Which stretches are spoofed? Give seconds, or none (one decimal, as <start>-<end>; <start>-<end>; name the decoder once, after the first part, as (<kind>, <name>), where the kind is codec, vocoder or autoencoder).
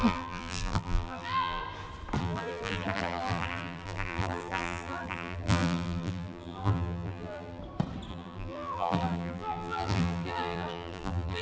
0.0-1.6 (vocoder, BigVGAN v2); 2.2-7.6; 8.1-11.4